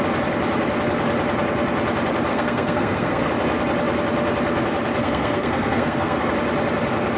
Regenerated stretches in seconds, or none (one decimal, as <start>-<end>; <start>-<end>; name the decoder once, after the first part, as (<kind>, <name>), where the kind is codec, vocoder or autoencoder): 2.3-3.3 (codec, SNAC); 5.0-6.3